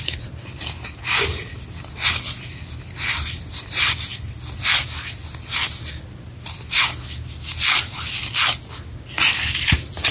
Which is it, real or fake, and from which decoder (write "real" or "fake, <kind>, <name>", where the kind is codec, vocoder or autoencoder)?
real